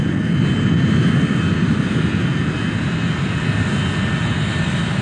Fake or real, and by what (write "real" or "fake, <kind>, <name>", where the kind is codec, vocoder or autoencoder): real